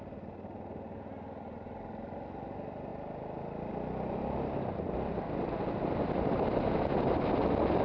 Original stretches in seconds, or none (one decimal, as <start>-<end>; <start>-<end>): 0.0-2.9; 3.7-7.8